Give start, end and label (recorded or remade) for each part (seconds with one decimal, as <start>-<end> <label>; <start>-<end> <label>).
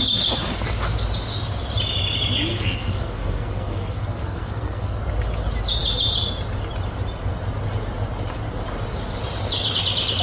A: 0.0-2.5 recorded; 2.5-5.0 remade; 5.0-10.2 recorded